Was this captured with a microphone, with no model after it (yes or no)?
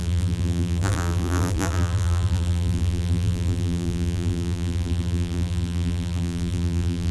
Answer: no